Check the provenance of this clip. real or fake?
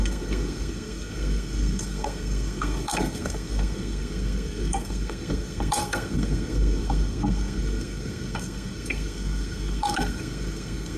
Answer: fake